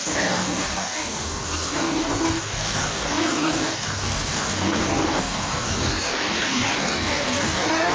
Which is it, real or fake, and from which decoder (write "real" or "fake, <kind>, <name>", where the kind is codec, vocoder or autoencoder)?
fake, codec, DAC